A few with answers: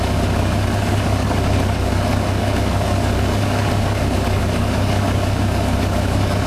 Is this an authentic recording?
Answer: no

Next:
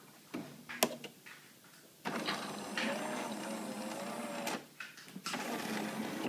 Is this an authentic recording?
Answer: yes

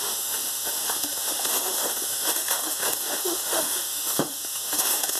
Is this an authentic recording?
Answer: no